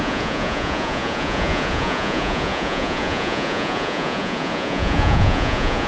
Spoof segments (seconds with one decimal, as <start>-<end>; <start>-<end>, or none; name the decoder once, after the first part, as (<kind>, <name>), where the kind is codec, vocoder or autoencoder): 0.0-5.9 (vocoder, Vocos)